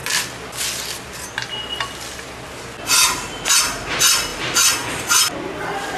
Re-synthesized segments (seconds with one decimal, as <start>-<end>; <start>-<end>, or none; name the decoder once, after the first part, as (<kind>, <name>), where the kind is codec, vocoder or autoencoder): none